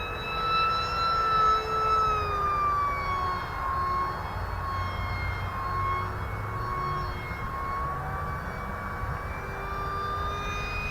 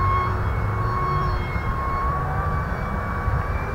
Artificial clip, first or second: second